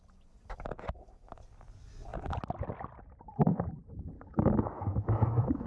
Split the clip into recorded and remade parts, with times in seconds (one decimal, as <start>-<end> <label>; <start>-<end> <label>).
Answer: 0.0-4.3 recorded; 4.3-5.7 remade